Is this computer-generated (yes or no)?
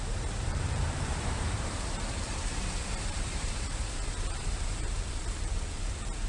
yes